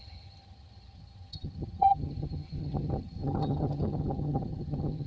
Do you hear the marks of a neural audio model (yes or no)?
yes